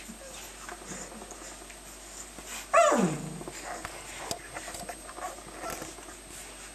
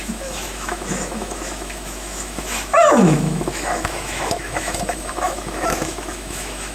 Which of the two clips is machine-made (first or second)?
second